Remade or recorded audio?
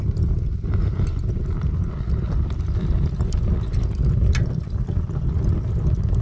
recorded